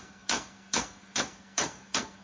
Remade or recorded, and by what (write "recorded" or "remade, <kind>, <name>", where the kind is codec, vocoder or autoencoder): remade, codec, SNAC